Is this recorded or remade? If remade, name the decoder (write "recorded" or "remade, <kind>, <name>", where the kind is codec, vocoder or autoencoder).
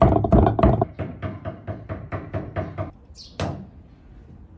recorded